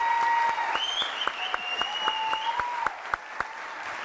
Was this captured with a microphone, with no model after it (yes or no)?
yes